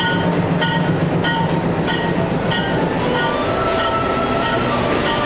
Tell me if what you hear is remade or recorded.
recorded